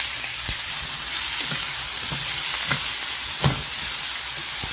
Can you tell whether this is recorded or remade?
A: recorded